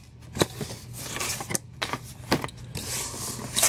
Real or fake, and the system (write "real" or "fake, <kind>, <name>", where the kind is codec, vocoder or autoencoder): real